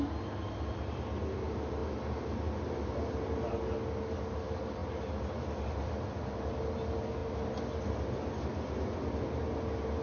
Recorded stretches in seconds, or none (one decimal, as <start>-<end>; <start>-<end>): 0.0-10.0